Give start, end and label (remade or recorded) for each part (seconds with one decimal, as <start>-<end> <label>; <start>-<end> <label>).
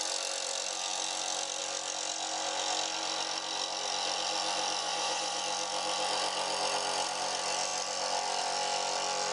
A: 0.0-4.8 recorded; 4.8-5.4 remade; 5.4-9.3 recorded